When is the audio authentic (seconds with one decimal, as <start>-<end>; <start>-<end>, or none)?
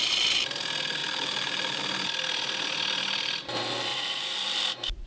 0.0-1.0; 1.8-3.9